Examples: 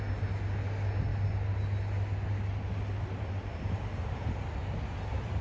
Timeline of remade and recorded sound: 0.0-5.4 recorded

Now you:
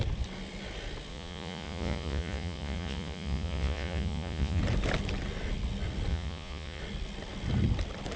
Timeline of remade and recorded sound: 0.0-1.1 recorded; 1.1-4.6 remade; 4.6-6.1 recorded; 6.1-6.8 remade; 6.8-8.2 recorded

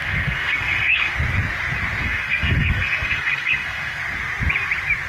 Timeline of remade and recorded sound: 0.0-1.1 remade; 1.1-2.0 recorded; 2.0-4.0 remade; 4.0-5.1 recorded

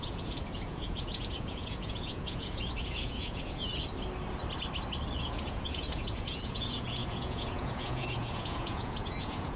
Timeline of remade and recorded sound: 0.0-3.7 remade; 3.7-5.1 recorded; 5.1-9.6 remade